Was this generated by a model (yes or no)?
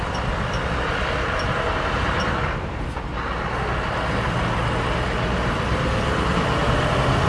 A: no